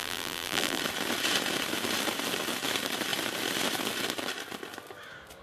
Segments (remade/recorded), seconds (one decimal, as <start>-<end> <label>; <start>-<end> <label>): 0.0-0.8 remade; 0.8-5.4 recorded